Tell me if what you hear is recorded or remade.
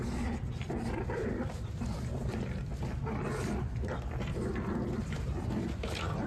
recorded